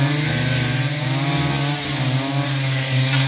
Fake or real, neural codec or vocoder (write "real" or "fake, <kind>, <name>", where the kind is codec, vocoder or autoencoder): real